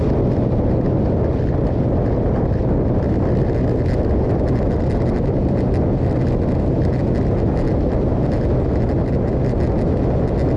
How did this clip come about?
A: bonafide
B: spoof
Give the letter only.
A